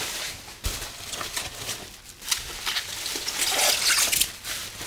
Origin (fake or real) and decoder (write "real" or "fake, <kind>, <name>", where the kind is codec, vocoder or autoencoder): real